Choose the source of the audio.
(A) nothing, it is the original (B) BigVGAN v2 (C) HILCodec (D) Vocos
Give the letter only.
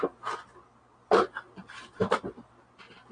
A